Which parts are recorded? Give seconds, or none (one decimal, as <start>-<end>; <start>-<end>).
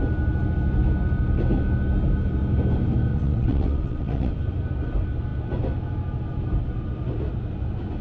0.0-3.1; 4.3-8.0